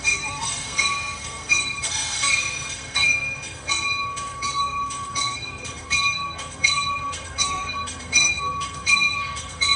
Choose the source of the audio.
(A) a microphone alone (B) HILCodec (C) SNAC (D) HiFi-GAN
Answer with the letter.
C